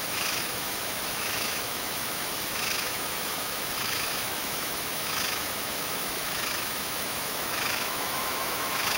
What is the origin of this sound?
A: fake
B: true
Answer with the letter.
A